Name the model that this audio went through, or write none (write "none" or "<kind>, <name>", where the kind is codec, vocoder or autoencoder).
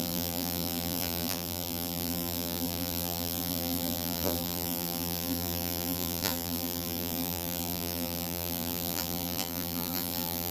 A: vocoder, BigVGAN v2